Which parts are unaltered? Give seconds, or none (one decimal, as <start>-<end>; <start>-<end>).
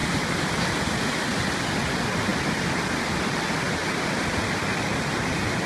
0.8-5.7